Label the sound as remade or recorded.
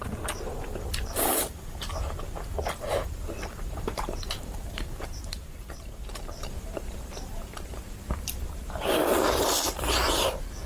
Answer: remade